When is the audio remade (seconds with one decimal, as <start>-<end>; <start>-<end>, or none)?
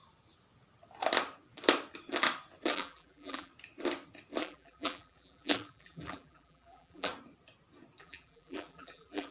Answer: 2.7-3.5; 4.4-7.1; 8.0-9.3